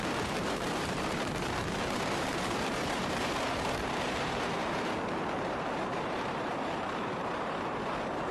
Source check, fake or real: fake